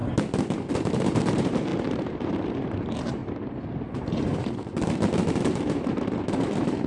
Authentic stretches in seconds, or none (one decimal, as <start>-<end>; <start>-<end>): 0.0-0.7; 3.2-4.0